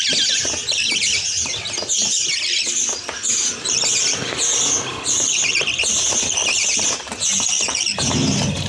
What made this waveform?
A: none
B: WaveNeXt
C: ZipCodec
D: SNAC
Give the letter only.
A